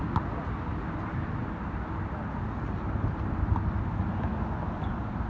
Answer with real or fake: real